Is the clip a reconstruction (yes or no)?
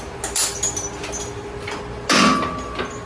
no